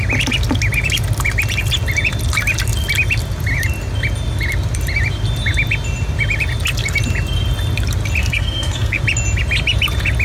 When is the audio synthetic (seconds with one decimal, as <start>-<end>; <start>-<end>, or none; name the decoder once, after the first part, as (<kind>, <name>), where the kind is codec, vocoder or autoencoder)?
8.2-9.0 (codec, SNAC)